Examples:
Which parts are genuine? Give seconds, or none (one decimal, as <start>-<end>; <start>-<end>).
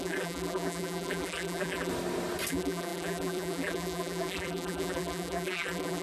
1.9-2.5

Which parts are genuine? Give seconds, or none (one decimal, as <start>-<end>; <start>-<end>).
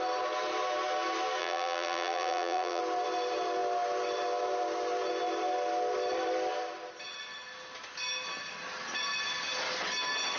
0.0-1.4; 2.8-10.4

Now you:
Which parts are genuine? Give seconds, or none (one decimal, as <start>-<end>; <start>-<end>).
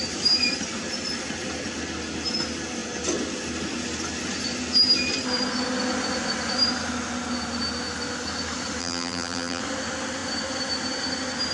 0.0-8.8; 9.6-11.5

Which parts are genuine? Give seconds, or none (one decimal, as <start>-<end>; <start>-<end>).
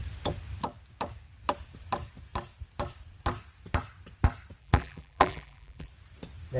0.0-4.6; 5.9-6.6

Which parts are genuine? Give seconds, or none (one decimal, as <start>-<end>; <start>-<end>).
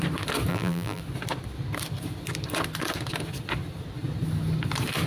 0.0-0.5; 1.0-5.1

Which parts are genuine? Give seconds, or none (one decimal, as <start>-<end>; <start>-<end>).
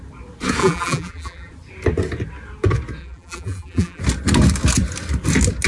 0.0-0.6; 1.5-3.0; 4.0-5.7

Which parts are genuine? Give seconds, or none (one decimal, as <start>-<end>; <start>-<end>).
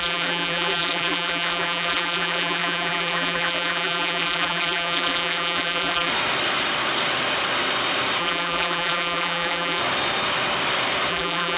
6.1-8.2; 9.8-11.1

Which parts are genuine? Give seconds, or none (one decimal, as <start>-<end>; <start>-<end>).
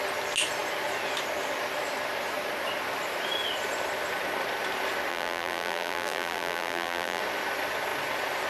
0.0-5.1; 7.2-8.5